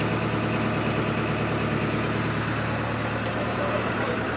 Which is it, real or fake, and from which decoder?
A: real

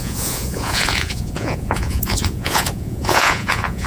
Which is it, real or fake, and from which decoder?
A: fake, vocoder, Vocos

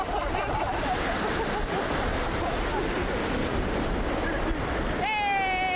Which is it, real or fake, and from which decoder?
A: real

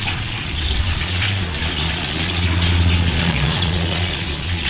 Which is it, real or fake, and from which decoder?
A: fake, vocoder, Vocos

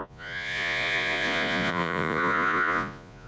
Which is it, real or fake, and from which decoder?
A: fake, vocoder, Vocos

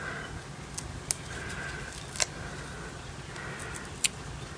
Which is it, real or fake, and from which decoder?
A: real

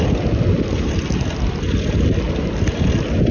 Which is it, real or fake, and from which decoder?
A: real